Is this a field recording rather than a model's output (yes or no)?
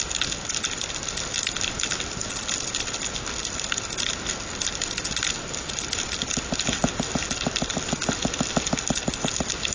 yes